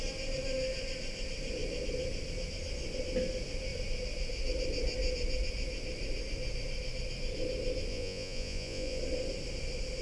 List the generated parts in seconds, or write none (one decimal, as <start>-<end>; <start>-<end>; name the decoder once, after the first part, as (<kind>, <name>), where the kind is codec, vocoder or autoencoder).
7.9-9.0 (vocoder, Vocos)